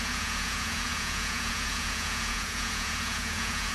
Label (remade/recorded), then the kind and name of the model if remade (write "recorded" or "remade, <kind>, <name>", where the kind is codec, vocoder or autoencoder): remade, vocoder, Vocos